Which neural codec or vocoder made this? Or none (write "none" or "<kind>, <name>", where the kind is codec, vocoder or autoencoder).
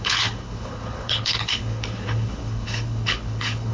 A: codec, HILCodec